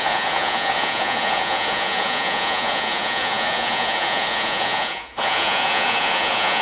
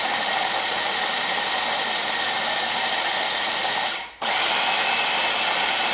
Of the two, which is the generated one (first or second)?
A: first